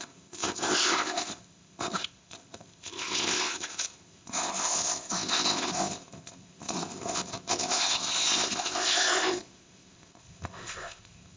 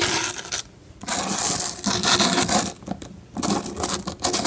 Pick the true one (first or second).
second